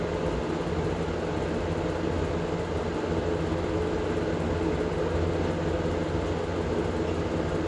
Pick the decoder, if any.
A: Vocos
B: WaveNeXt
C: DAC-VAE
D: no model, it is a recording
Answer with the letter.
D